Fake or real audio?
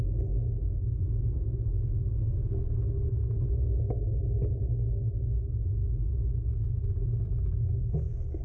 real